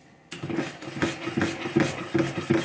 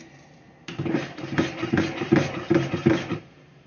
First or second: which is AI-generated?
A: second